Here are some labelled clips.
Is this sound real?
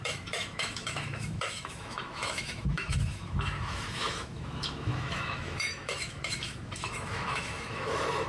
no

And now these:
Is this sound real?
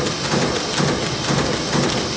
yes